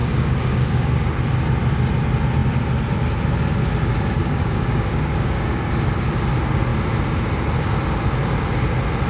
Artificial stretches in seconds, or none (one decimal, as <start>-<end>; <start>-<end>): 0.0-1.2; 4.2-5.7